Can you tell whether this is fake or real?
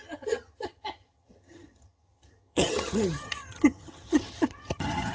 fake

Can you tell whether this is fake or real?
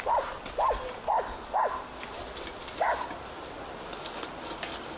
real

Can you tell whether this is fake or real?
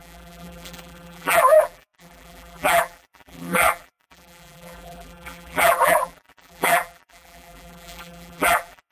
fake